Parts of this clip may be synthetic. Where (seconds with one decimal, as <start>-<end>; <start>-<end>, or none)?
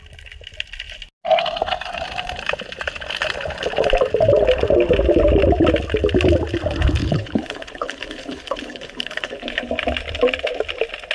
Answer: 7.0-9.7